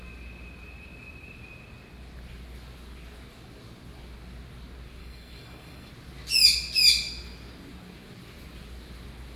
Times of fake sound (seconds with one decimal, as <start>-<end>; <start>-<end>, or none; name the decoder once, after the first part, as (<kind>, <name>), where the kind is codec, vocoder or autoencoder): 5.0-5.9 (codec, SNAC)